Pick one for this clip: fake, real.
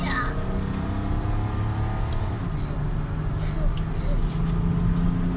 real